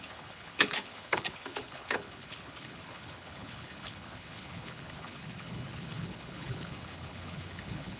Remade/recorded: remade